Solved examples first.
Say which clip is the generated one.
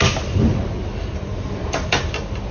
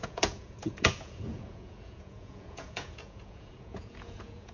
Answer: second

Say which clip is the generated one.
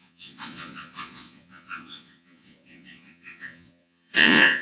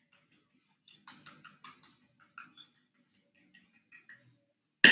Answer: first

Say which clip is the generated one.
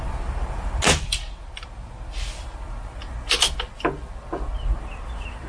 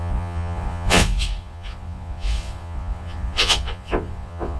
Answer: second